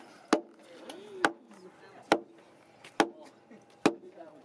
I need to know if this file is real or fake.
real